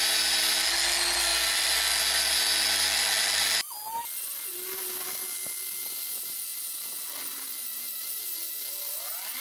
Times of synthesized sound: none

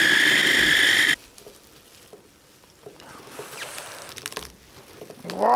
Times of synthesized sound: none

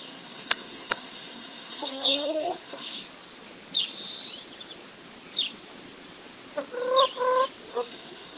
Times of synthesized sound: 0.0-3.0 (codec, SNAC); 7.7-8.4

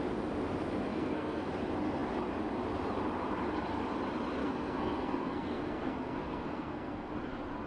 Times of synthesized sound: 0.9-1.5 (codec, SNAC); 4.4-7.1